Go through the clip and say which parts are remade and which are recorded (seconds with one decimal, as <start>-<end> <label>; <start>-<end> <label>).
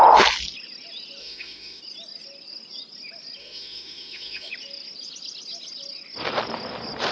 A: 0.0-1.2 recorded; 1.2-1.8 remade; 1.8-3.4 recorded; 3.4-4.5 remade; 4.5-7.1 recorded